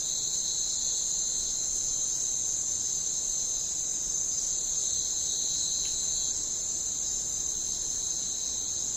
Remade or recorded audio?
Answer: recorded